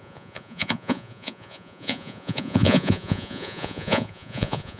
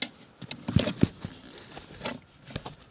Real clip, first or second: second